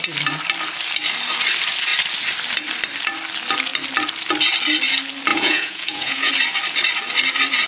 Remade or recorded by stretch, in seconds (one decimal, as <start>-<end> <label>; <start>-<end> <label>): 0.0-5.3 recorded; 5.3-6.3 remade; 6.3-7.7 recorded